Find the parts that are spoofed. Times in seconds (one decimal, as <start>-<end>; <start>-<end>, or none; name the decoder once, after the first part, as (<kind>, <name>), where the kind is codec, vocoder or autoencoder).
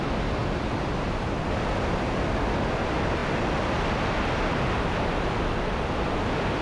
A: none